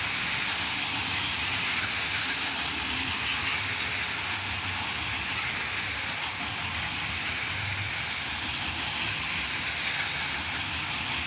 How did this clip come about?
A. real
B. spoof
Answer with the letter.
A